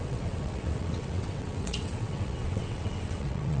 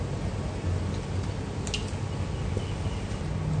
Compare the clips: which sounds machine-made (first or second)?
first